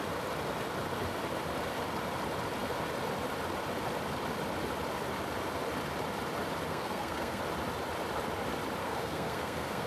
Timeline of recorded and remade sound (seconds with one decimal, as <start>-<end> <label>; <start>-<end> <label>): 0.0-6.7 recorded; 6.7-7.4 remade; 7.4-8.8 recorded; 8.8-9.9 remade